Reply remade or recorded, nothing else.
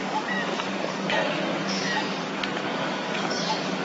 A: remade